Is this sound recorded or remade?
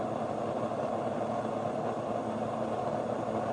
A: remade